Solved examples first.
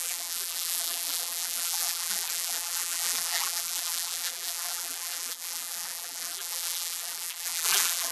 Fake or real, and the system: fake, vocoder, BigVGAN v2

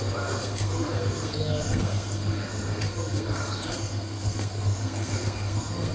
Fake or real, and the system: fake, codec, SNAC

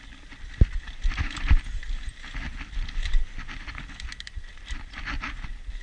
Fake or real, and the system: real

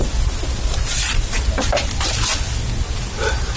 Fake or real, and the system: real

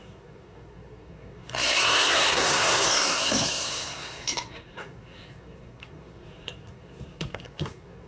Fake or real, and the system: fake, codec, SNAC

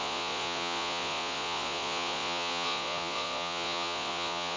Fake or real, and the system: fake, vocoder, Vocos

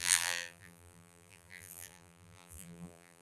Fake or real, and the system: fake, vocoder, BigVGAN v2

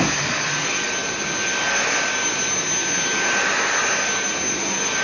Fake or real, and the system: real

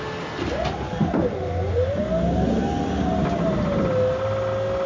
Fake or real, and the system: real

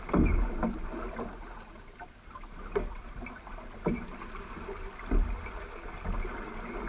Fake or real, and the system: real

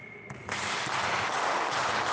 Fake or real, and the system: real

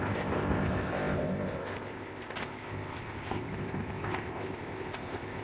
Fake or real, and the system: fake, codec, ZipCodec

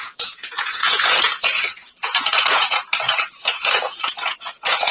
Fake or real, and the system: fake, vocoder, Vocos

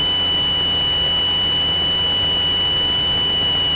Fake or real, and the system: real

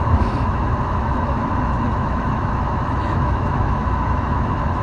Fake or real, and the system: fake, autoencoder, DAC-VAE